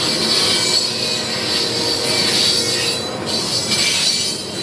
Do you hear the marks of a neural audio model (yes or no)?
no